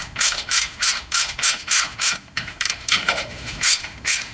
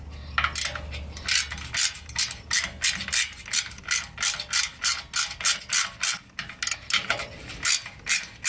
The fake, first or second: first